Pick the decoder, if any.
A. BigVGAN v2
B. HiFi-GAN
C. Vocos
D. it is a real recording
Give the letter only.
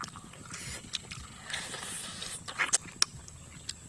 D